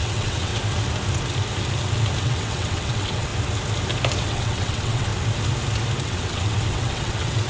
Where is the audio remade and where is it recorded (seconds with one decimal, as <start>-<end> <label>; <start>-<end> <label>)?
0.0-0.5 remade; 0.5-2.2 recorded; 2.2-3.3 remade; 3.3-4.2 recorded; 4.2-5.1 remade; 5.1-6.0 recorded; 6.0-7.5 remade